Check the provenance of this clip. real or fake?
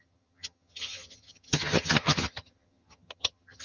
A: fake